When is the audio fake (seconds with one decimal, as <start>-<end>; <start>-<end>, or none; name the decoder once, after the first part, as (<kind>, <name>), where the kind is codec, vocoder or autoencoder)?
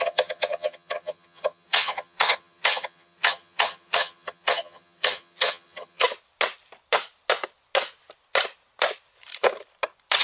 0.0-6.0 (vocoder, HiFi-GAN)